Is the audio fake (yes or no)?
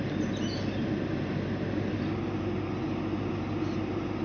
no